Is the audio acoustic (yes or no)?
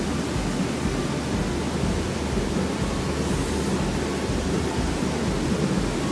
yes